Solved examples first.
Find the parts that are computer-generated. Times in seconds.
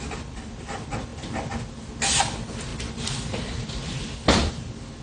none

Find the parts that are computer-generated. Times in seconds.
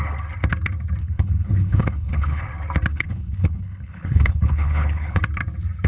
1.0-2.4 (codec, HILCodec); 2.9-5.2